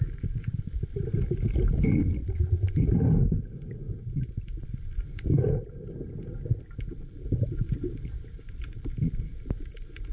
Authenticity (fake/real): real